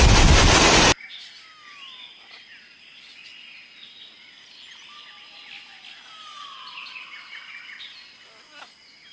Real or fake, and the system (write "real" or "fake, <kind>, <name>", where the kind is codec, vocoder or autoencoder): real